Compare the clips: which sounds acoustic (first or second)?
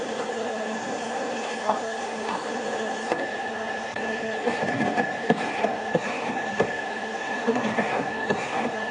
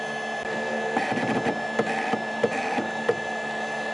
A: second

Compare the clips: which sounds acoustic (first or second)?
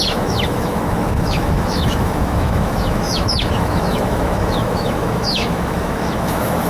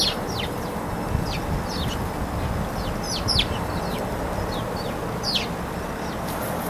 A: second